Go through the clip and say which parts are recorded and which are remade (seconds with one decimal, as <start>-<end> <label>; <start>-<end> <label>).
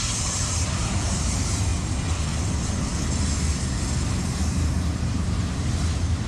0.0-1.7 remade; 1.7-4.4 recorded; 4.4-6.3 remade